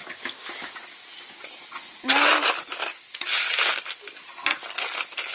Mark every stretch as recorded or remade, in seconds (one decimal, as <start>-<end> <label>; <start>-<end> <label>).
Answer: 0.0-0.8 remade; 0.8-2.9 recorded; 2.9-3.7 remade; 3.7-5.3 recorded

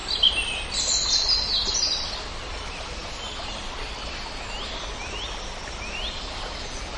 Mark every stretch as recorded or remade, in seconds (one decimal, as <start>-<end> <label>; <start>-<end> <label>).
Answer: 0.0-7.0 recorded

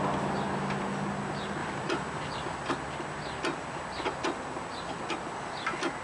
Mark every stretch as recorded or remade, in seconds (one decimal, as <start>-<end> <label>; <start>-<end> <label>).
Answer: 0.0-6.0 recorded

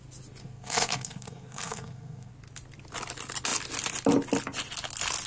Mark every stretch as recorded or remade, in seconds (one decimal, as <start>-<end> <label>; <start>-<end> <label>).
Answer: 0.0-0.4 recorded; 0.4-2.3 remade; 2.3-5.3 recorded

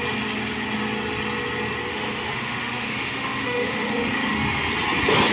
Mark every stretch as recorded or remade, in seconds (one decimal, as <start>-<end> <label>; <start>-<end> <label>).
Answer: 0.0-1.9 recorded; 1.9-4.7 remade; 4.7-5.3 recorded

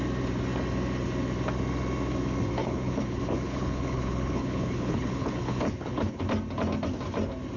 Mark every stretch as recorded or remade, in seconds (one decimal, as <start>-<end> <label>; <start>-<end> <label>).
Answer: 0.0-2.6 recorded; 2.6-6.2 remade; 6.2-7.6 recorded